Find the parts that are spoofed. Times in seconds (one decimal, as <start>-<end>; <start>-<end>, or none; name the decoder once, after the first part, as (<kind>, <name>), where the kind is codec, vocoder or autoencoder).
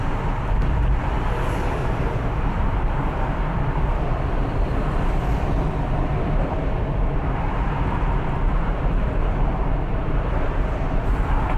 0.0-1.8 (vocoder, BigVGAN v2); 2.5-11.6